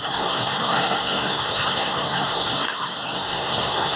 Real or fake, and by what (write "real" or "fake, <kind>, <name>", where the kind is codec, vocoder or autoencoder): fake, codec, SNAC